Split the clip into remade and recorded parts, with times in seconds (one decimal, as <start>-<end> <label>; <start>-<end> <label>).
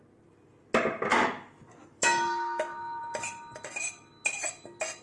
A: 0.0-1.1 recorded; 1.1-3.0 remade; 3.0-5.0 recorded